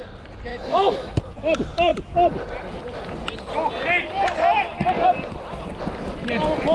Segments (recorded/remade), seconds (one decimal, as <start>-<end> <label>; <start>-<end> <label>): 0.0-0.5 recorded; 0.5-1.1 remade; 1.1-6.7 recorded